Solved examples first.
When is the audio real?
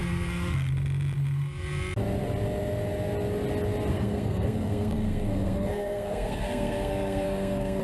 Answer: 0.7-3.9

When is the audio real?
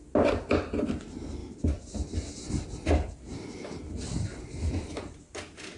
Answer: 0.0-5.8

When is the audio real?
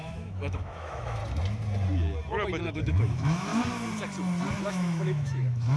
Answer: 1.2-2.6; 3.5-4.6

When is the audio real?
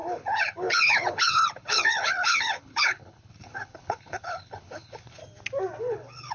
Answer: 5.2-5.8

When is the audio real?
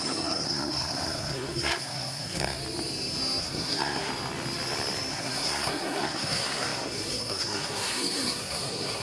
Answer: 2.6-3.4; 4.1-5.1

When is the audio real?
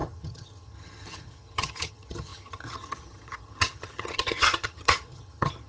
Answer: none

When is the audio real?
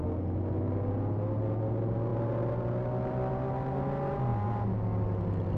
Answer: 0.0-5.6